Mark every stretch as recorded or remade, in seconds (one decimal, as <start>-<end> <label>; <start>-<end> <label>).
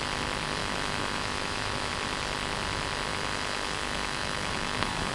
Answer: 0.0-0.6 recorded; 0.6-1.9 remade; 1.9-3.1 recorded; 3.1-5.1 remade